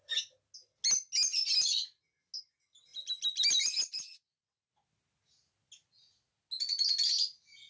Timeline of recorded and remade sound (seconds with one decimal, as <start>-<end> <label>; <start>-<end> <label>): 0.0-7.7 recorded